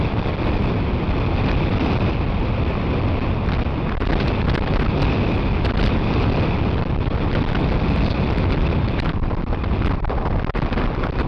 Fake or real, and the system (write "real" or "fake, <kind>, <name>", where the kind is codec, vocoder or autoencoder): real